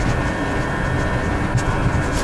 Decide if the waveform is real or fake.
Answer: real